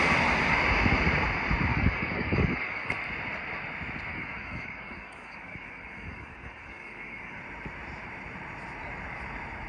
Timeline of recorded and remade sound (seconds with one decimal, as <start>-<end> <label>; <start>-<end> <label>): 0.0-1.7 recorded; 1.7-2.9 remade; 2.9-4.1 recorded; 4.1-7.4 remade; 7.4-9.7 recorded